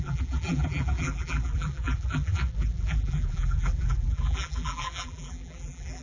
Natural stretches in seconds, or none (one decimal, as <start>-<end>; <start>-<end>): none